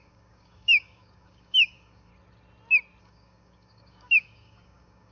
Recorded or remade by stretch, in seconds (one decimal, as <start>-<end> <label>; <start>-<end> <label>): 0.0-2.1 remade; 2.1-3.0 recorded; 3.0-5.1 remade